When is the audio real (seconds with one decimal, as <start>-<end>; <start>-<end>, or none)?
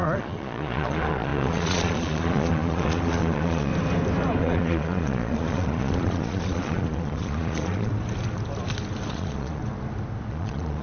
3.7-4.4; 7.9-9.1; 9.6-10.3